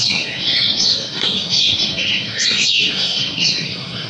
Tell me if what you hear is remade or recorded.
remade